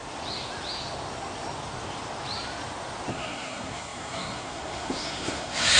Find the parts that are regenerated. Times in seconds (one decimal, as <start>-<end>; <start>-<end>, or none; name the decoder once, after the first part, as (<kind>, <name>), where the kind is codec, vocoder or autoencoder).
3.1-5.8 (codec, SNAC)